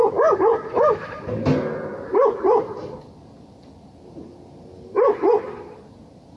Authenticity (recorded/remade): recorded